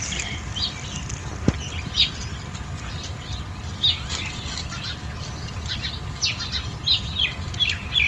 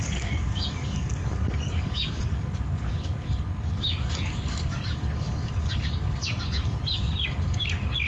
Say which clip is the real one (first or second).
first